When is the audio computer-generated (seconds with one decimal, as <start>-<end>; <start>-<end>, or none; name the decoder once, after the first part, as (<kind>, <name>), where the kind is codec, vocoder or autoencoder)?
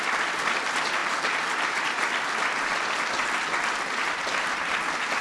none